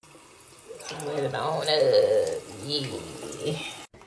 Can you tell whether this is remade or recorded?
recorded